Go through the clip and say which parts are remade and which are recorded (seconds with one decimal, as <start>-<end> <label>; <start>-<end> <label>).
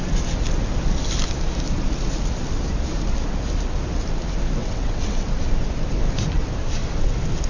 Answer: 0.0-4.6 recorded; 4.6-5.3 remade; 5.3-7.5 recorded